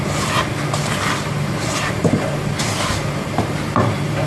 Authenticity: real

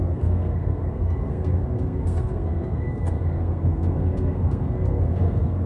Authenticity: fake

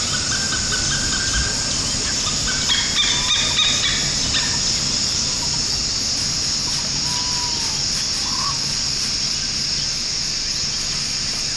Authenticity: real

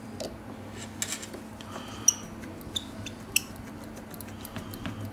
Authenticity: real